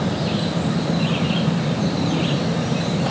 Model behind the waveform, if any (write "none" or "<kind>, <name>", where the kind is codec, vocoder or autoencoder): none